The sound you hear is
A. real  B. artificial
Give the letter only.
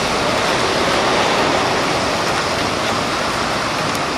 A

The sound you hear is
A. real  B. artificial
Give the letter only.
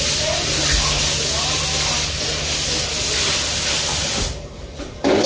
A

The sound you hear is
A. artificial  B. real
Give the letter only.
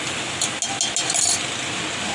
B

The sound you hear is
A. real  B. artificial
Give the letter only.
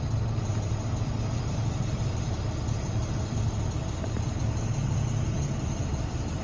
B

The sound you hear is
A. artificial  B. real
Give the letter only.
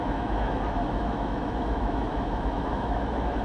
A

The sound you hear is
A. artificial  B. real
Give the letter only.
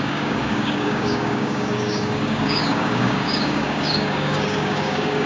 A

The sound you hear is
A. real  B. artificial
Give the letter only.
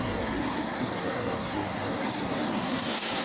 B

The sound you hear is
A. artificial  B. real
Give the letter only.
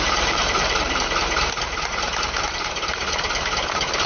A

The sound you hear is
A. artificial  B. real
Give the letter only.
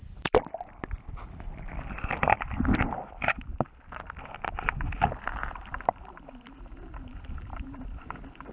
A